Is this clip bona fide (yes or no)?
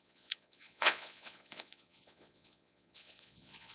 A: no